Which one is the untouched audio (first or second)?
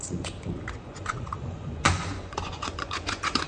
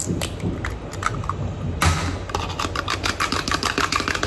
second